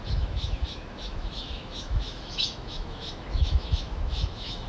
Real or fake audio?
fake